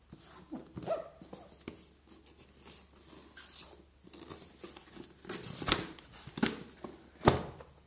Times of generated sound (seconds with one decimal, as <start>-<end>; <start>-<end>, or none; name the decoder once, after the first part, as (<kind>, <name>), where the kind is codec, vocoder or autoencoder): none